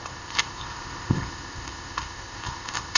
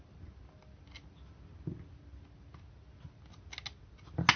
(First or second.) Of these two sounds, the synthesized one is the first